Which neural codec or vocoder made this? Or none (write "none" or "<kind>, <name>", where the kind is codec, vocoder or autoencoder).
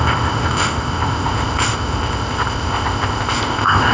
codec, ZipCodec